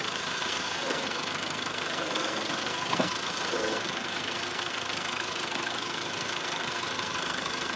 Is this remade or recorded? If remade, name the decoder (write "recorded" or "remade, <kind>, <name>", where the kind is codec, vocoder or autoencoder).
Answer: remade, codec, SNAC